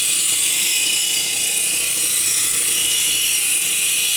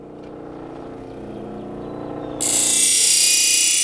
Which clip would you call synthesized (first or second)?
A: first